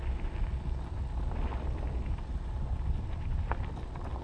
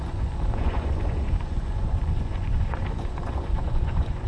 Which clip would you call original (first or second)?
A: first